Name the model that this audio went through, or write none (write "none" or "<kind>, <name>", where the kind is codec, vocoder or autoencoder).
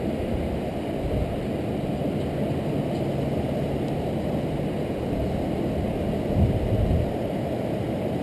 none